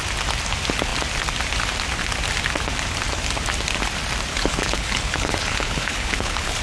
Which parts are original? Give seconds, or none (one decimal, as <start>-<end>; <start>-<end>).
0.0-4.3